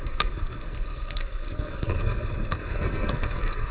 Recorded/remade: remade